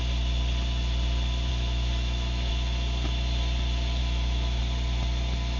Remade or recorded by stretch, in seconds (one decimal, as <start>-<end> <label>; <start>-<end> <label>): 0.0-1.5 recorded; 1.5-2.5 remade; 2.5-4.0 recorded; 4.0-4.6 remade; 4.6-5.6 recorded